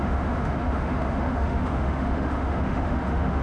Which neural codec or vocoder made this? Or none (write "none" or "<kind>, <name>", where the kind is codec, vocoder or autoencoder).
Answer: autoencoder, DAC-VAE